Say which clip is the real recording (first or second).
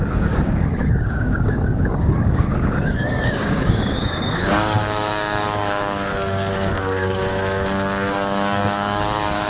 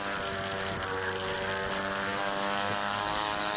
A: second